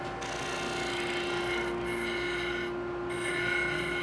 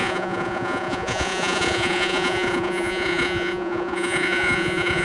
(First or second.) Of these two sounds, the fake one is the second